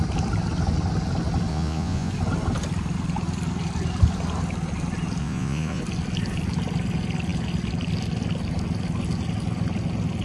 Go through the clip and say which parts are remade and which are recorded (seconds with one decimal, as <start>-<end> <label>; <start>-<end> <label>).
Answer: 0.0-1.5 recorded; 1.5-2.1 remade; 2.1-5.2 recorded; 5.2-5.8 remade; 5.8-10.2 recorded